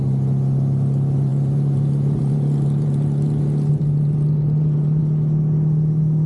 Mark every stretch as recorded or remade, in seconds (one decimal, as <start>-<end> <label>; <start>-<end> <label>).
0.0-1.3 recorded; 1.3-5.0 remade; 5.0-6.3 recorded